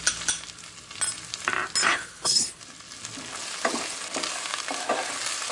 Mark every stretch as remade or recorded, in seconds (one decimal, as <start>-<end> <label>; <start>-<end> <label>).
0.0-1.8 recorded; 1.8-2.6 remade; 2.6-5.5 recorded